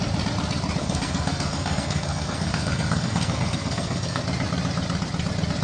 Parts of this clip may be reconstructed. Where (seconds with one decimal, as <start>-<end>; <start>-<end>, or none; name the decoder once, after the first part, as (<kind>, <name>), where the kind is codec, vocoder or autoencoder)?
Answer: 0.8-4.2 (codec, SNAC)